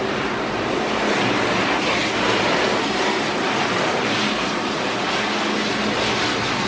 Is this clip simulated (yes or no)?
no